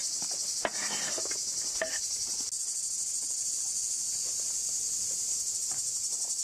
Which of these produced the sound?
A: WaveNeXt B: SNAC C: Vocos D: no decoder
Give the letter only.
D